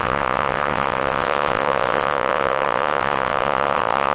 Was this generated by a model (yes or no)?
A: yes